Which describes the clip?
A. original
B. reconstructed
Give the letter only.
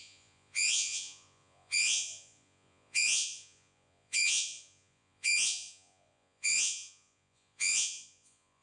B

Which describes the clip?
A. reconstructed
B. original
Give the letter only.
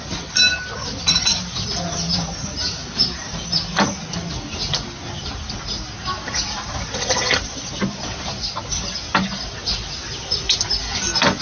B